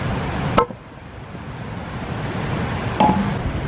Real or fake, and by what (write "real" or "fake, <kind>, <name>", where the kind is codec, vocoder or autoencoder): real